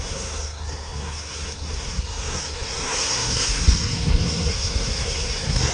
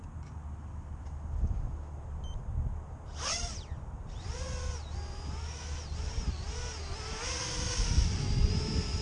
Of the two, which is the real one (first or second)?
second